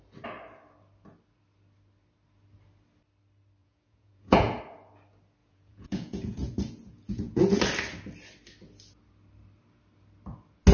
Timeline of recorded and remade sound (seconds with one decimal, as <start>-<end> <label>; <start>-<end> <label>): 0.0-3.6 recorded; 3.6-4.6 remade; 4.6-5.4 recorded; 5.4-7.6 remade; 7.6-10.7 recorded